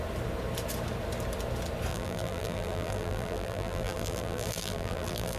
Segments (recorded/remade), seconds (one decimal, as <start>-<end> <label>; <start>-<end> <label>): 0.0-1.9 recorded; 1.9-5.4 remade